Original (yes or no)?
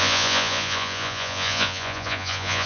no